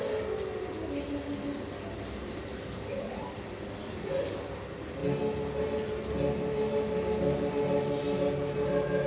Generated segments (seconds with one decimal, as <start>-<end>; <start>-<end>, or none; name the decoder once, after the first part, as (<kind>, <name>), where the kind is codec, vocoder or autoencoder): none